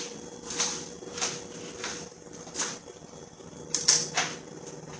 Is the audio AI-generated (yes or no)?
yes